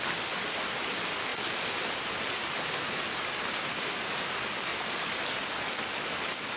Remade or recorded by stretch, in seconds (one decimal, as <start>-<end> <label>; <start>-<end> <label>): 0.0-6.6 recorded